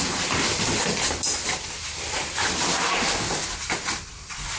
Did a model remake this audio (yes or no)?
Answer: no